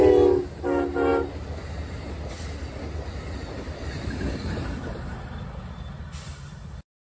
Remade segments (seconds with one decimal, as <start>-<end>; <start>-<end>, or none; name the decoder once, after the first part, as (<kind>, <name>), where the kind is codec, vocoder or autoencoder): none